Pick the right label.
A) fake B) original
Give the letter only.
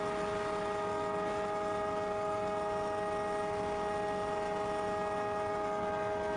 B